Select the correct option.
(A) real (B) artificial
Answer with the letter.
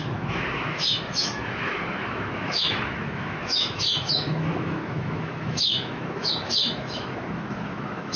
B